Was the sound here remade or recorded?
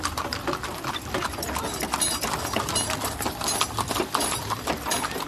remade